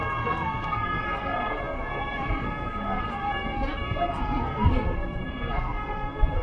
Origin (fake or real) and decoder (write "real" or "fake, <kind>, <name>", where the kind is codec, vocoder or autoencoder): fake, codec, SNAC